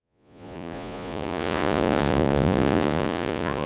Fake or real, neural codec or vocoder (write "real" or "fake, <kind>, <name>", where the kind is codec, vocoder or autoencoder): fake, vocoder, Vocos